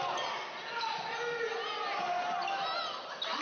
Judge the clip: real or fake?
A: real